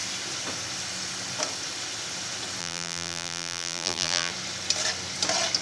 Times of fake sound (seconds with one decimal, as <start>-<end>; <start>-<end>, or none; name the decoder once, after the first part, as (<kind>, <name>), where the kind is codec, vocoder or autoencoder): 2.6-4.3 (vocoder, BigVGAN v2)

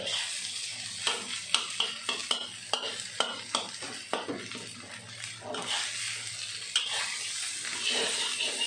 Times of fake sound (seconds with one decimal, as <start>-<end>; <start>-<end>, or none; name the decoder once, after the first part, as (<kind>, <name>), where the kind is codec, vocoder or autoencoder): none